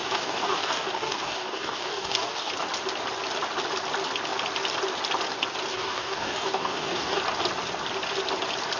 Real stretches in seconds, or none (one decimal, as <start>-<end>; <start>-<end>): 2.5-5.7; 7.2-8.8